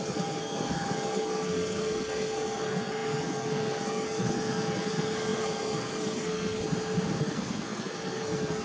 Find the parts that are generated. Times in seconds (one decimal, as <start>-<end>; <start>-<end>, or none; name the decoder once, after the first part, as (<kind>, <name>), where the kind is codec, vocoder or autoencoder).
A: 0.0-6.6 (codec, SNAC); 7.2-8.6